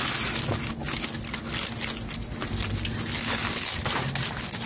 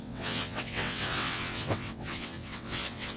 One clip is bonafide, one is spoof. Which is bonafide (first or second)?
first